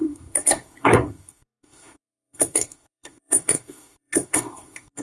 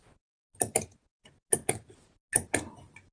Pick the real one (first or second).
second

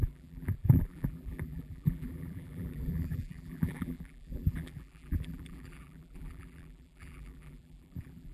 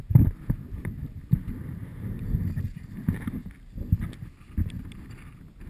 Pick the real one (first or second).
second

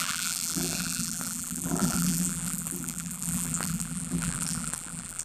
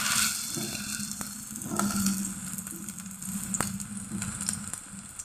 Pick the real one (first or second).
second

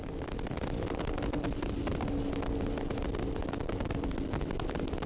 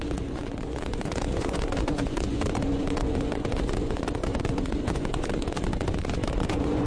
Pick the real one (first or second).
first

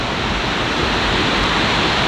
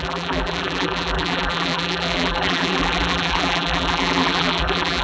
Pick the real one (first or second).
first